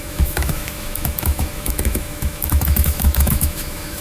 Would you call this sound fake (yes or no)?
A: yes